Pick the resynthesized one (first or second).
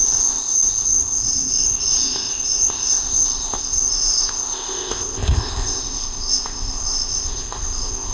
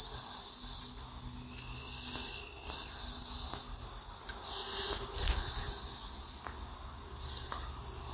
first